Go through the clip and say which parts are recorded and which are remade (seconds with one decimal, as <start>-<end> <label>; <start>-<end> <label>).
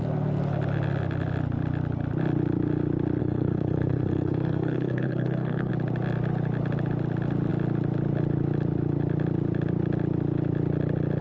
0.0-3.2 recorded; 3.2-5.7 remade; 5.7-11.2 recorded